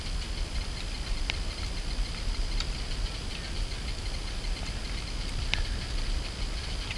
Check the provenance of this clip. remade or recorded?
recorded